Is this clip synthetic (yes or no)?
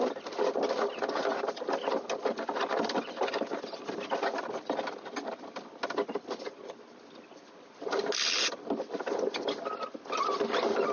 no